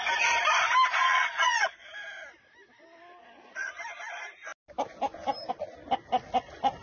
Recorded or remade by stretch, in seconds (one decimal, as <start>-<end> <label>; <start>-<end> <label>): 0.0-1.0 recorded; 1.0-1.9 remade; 1.9-3.2 recorded; 3.2-3.7 remade; 3.7-6.8 recorded